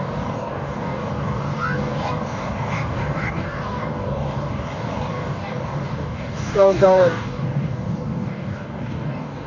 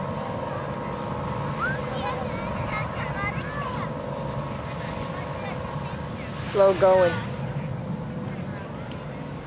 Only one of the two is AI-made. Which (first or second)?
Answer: first